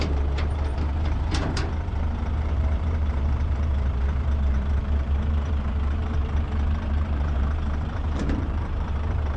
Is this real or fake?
fake